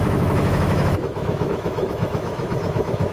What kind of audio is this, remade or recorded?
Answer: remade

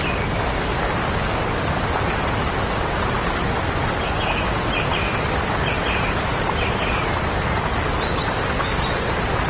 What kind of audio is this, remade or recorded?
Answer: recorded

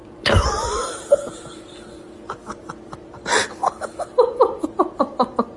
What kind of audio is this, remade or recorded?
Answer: recorded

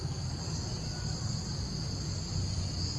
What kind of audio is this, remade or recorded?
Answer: recorded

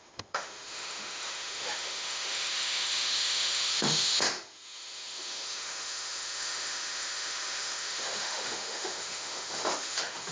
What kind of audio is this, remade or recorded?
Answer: remade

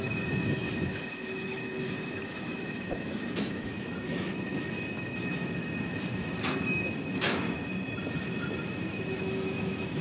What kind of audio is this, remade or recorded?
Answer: remade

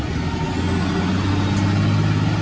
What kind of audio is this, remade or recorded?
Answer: recorded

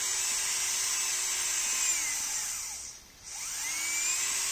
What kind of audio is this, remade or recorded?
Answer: recorded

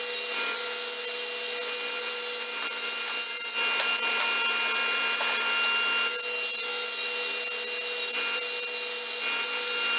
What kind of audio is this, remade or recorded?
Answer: recorded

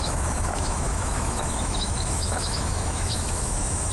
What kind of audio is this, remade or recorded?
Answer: remade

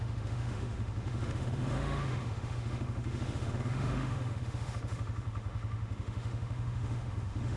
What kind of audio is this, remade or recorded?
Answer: remade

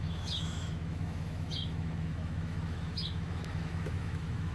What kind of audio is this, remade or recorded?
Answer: remade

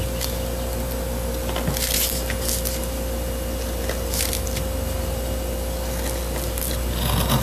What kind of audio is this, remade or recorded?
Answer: recorded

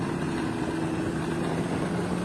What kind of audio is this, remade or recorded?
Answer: recorded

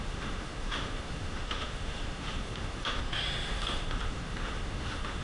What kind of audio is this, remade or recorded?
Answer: remade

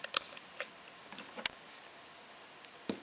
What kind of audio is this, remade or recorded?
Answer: recorded